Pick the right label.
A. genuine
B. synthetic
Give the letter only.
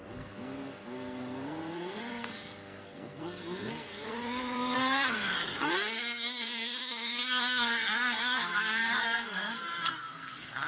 B